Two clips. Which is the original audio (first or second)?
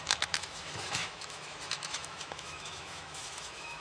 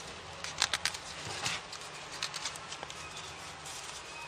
second